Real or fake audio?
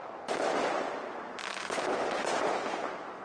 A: real